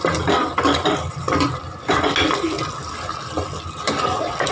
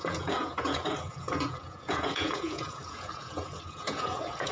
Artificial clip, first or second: second